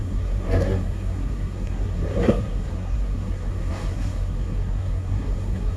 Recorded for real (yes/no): no